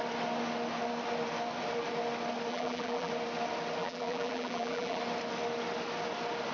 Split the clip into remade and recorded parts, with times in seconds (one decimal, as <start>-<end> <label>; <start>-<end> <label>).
0.0-2.5 recorded; 2.5-3.1 remade; 3.1-3.8 recorded; 3.8-5.0 remade; 5.0-6.5 recorded